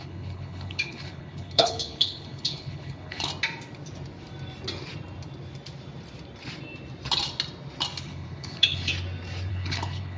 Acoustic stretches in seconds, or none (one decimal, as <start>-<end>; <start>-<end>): 3.3-8.0; 8.9-9.5